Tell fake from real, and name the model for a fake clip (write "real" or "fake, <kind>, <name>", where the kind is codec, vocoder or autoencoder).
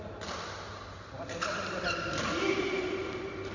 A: real